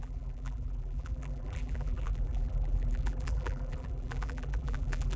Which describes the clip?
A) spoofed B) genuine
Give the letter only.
A